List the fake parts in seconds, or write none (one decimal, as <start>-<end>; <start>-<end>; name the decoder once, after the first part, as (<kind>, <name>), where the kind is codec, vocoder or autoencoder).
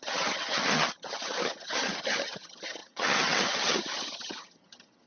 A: 0.0-5.1 (vocoder, HiFi-GAN)